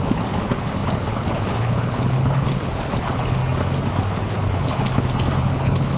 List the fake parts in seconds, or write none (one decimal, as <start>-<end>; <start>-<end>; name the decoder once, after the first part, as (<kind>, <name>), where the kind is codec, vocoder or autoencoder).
0.0-3.4 (codec, HILCodec); 4.1-4.8; 5.4-6.0

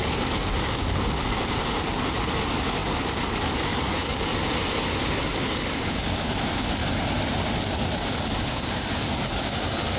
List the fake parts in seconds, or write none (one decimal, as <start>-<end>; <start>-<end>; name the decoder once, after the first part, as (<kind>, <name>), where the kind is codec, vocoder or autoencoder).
0.0-4.3 (codec, DAC); 5.2-6.8; 7.6-10.0

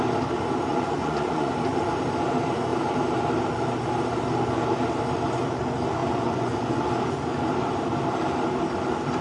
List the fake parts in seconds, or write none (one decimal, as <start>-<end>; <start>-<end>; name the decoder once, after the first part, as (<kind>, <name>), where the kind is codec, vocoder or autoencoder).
0.7-1.5 (vocoder, Vocos); 6.0-6.9

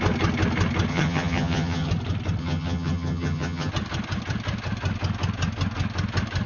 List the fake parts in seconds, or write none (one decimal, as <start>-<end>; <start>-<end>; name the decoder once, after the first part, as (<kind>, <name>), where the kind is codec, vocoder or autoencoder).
0.9-1.9 (vocoder, HiFi-GAN); 2.4-3.7